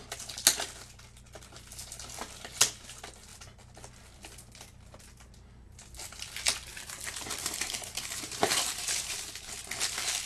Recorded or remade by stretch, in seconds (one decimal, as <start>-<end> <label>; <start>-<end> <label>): 0.0-6.7 recorded; 6.7-9.5 remade; 9.5-10.3 recorded